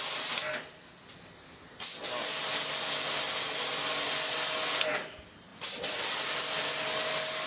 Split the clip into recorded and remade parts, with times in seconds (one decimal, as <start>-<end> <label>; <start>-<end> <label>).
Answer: 0.0-5.5 recorded; 5.5-6.4 remade; 6.4-7.5 recorded